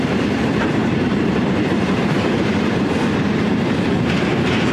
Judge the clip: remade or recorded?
remade